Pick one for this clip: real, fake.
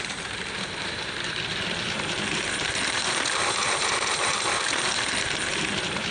fake